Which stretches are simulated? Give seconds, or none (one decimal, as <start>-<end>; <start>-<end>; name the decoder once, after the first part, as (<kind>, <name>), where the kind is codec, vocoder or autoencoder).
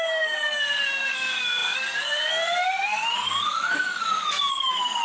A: 0.0-5.0 (codec, SNAC)